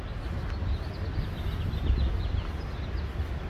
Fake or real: real